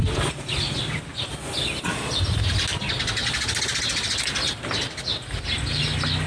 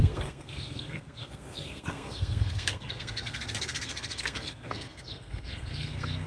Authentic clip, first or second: first